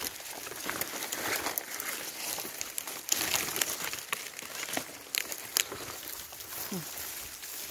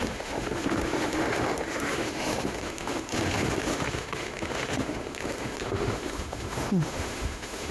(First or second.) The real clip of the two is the first